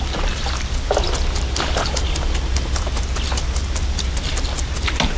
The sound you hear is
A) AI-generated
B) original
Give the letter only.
B